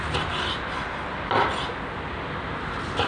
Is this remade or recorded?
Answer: recorded